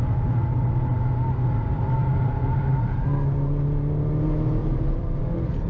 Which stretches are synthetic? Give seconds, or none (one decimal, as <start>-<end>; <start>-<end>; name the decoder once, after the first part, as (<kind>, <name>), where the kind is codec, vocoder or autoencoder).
2.0-2.6 (vocoder, BigVGAN v2); 4.6-5.2